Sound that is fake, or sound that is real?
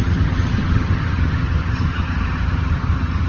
fake